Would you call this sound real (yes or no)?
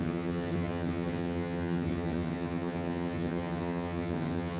no